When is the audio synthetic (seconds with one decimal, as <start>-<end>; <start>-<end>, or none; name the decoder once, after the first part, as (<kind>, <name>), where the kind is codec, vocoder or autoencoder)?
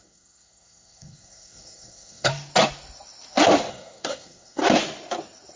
0.0-2.3 (codec, SNAC); 3.7-4.6